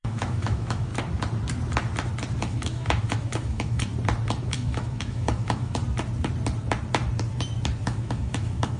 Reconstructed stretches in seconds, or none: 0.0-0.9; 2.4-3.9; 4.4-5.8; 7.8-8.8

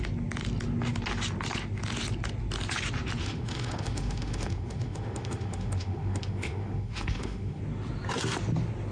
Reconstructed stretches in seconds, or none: 3.2-7.6

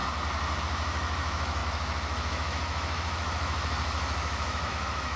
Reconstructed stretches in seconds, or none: 0.6-5.2

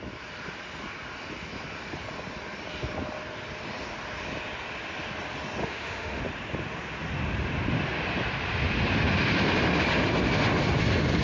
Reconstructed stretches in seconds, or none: 5.6-6.2

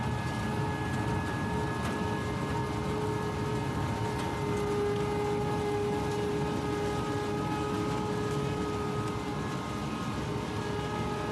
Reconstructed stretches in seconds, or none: none

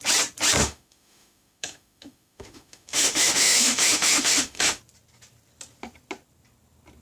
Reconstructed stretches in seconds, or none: 0.6-4.8